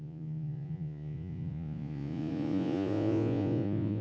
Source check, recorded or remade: remade